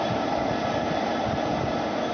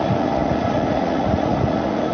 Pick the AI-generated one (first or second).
second